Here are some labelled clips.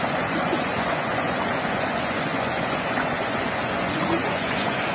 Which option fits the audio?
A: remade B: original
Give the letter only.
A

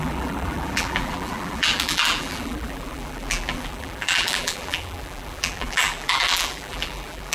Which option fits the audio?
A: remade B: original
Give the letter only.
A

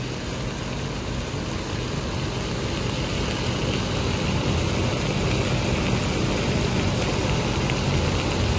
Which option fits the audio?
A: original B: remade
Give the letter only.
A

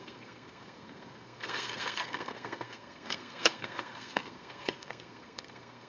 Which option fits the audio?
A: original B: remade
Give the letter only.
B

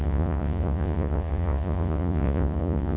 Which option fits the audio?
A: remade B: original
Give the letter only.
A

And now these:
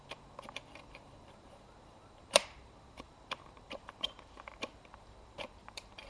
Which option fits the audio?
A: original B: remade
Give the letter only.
B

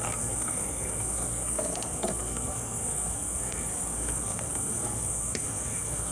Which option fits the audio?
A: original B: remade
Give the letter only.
B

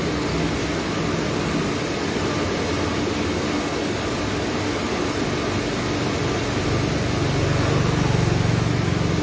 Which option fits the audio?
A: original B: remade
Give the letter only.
A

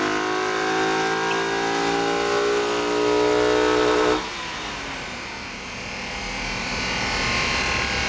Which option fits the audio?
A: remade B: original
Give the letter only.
B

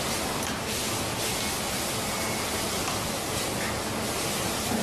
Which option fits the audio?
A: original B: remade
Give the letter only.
A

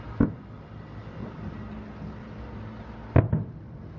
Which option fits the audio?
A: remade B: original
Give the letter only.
B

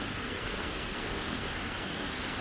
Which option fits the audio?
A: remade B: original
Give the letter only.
A